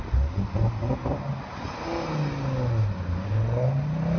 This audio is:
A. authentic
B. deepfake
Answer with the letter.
A